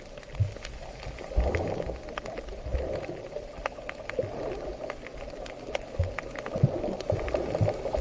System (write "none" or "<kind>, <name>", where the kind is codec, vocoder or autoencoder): none